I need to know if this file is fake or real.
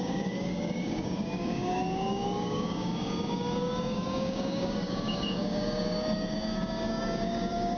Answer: fake